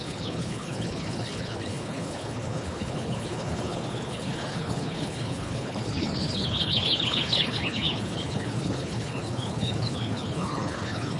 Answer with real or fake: fake